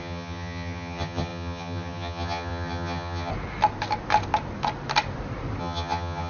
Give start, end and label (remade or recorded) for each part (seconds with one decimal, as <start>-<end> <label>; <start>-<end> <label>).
0.0-3.3 remade; 3.3-5.6 recorded; 5.6-6.3 remade

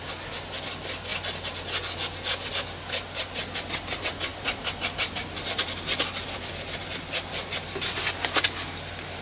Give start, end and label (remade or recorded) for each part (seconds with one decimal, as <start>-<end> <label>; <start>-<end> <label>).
0.0-9.2 recorded